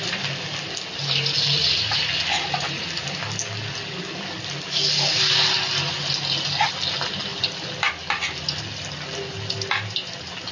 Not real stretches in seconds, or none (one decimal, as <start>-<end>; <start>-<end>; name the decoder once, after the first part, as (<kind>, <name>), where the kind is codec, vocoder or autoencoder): none